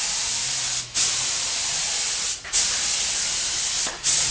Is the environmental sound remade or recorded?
recorded